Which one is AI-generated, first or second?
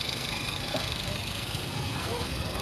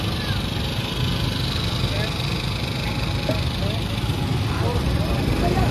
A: first